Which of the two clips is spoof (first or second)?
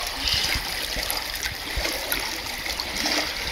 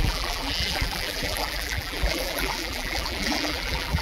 second